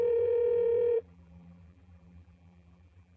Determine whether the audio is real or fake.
fake